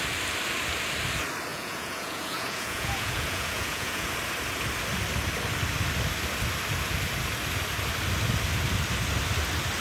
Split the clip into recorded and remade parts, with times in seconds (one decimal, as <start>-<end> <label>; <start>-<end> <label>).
0.0-1.5 recorded; 1.5-4.1 remade; 4.1-9.8 recorded